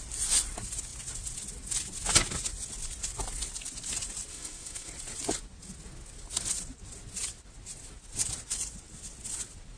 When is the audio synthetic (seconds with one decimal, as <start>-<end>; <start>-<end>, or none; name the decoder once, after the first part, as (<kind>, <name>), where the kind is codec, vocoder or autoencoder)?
4.3-4.9 (autoencoder, DAC-VAE)